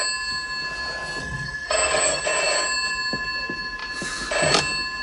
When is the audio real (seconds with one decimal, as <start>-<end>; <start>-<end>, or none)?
0.0-1.2; 2.2-5.0